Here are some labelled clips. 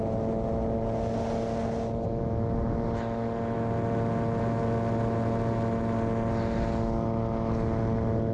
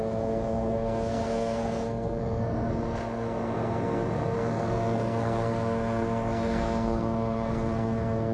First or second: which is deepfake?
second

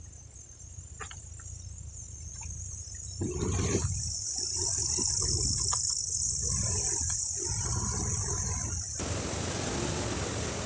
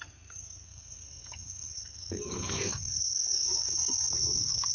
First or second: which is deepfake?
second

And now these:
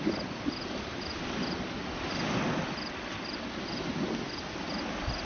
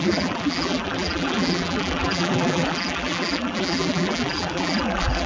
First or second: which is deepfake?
second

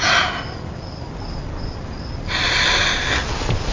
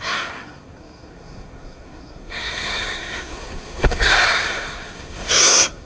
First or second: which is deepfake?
second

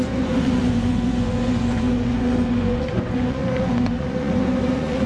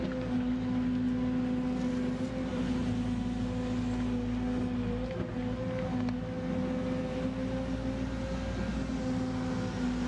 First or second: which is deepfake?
first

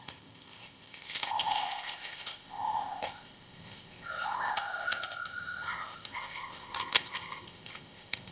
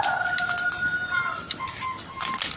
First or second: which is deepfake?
first